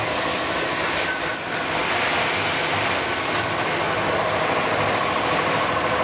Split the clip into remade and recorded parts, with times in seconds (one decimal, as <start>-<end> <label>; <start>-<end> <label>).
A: 0.0-6.0 recorded